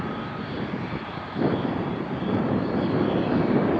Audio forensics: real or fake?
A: real